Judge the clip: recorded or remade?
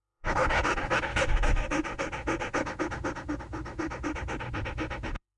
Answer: remade